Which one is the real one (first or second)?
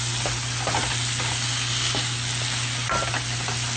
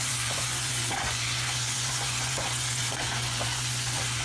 first